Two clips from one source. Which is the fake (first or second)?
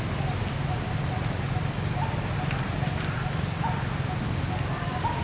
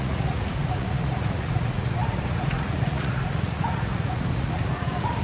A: second